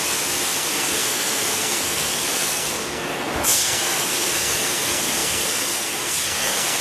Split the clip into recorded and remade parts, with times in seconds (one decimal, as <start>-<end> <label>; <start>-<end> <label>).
0.0-6.8 remade